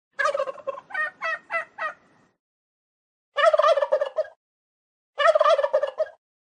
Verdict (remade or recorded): recorded